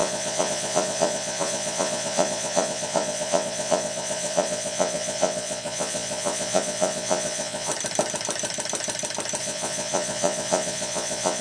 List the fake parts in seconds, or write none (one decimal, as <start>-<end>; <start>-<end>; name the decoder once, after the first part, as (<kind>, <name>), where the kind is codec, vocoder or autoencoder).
0.0-7.7 (vocoder, Vocos); 9.4-11.4